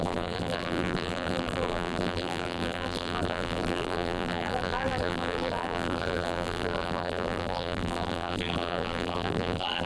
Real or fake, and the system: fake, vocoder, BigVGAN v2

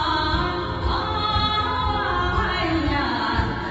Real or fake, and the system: real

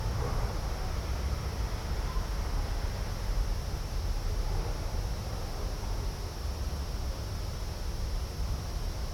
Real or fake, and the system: real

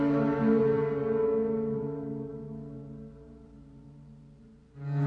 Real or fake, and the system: fake, vocoder, BigVGAN v2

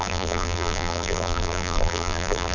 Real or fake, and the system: fake, vocoder, BigVGAN v2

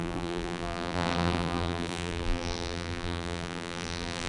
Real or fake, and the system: fake, vocoder, BigVGAN v2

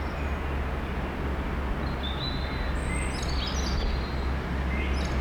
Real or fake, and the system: real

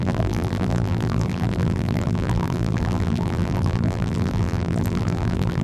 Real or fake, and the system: fake, vocoder, BigVGAN v2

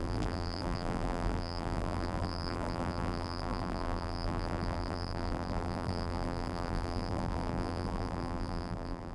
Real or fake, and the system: fake, vocoder, BigVGAN v2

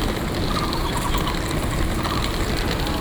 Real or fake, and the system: real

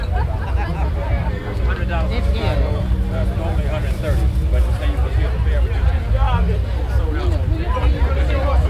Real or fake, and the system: real